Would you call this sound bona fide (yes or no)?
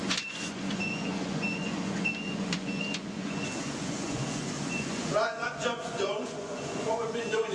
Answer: no